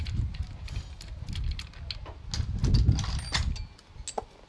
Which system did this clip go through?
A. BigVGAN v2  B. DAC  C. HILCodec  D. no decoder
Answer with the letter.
D